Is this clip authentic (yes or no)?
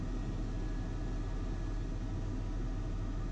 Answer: yes